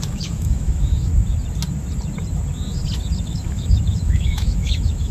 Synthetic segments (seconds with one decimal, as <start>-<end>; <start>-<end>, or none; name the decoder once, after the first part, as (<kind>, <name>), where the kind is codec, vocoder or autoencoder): 0.0-1.1 (autoencoder, DAC-VAE); 3.2-5.1